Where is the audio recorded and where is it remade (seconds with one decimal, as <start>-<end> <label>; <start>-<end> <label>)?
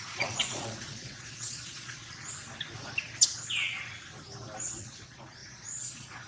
0.0-2.0 remade; 2.0-4.6 recorded; 4.6-6.3 remade